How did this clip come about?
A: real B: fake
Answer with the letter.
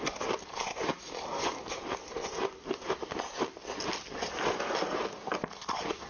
A